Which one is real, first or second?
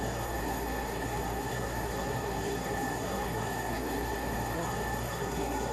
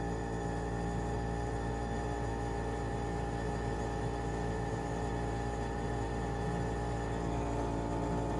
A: second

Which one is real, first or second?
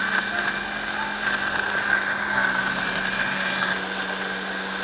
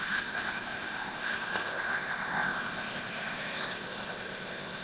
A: first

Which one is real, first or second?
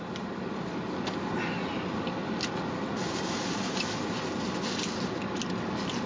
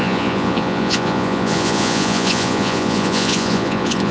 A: first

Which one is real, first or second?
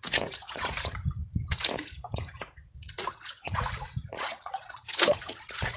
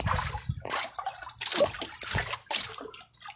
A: second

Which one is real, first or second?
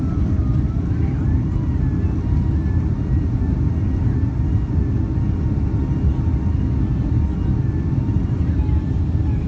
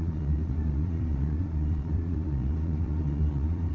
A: first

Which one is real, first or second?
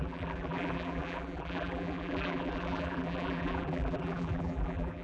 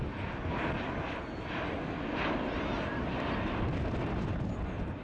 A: second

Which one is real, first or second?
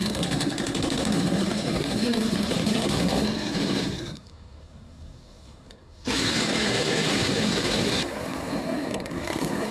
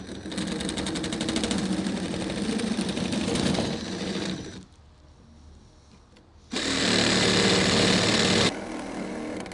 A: second